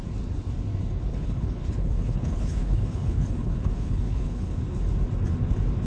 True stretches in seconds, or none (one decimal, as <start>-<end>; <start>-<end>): 0.0-1.1; 4.6-5.9